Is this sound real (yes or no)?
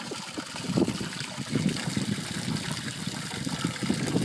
yes